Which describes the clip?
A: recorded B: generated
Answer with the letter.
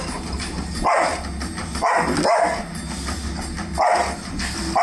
A